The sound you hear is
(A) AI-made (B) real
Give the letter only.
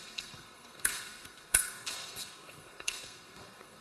A